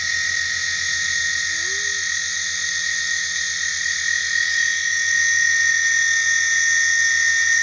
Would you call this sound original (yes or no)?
yes